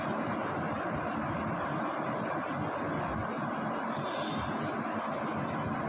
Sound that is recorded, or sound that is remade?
recorded